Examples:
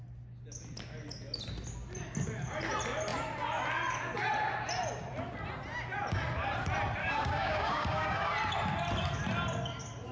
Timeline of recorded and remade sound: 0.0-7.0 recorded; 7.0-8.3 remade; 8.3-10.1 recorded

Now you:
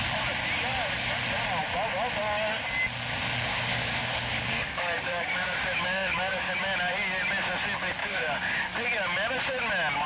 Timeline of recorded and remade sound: 0.0-3.5 recorded; 3.5-6.5 remade; 6.5-8.0 recorded; 8.0-8.8 remade; 8.8-10.1 recorded

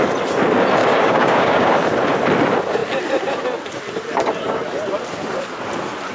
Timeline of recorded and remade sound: 0.0-0.8 recorded; 0.8-1.7 remade; 1.7-6.1 recorded

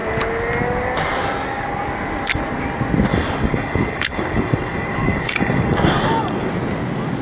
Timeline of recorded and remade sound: 0.0-3.1 recorded; 3.1-6.5 remade; 6.5-7.2 recorded